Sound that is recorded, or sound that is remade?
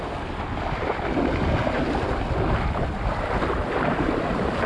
recorded